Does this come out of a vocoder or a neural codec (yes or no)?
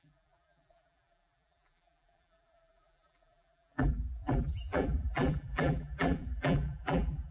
yes